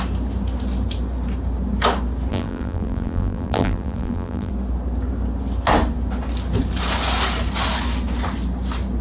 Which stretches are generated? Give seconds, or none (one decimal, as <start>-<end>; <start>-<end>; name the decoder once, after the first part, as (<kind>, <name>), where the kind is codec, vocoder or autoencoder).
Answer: 2.3-4.5 (vocoder, BigVGAN v2)